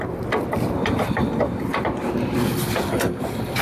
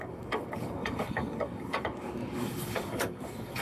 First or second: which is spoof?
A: second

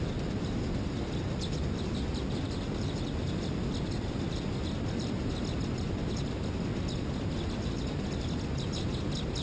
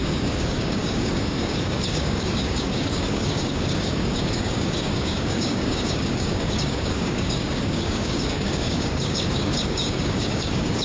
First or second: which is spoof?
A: second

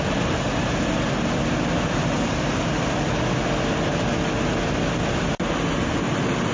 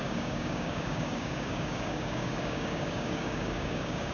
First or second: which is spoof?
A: second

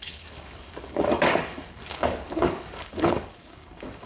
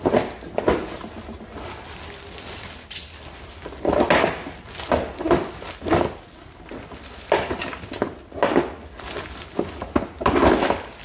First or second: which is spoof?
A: first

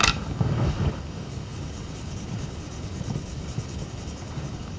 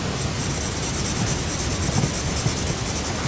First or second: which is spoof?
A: first